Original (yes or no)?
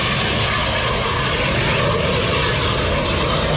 yes